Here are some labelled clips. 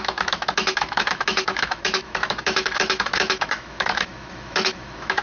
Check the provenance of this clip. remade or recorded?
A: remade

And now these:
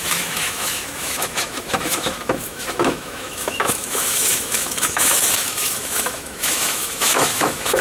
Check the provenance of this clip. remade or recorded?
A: remade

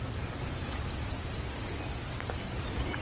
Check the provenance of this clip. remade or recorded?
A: recorded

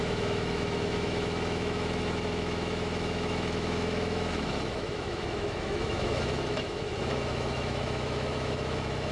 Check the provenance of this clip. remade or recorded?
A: remade